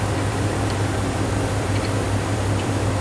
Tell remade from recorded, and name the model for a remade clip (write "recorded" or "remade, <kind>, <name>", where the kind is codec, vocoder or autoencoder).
remade, vocoder, BigVGAN v2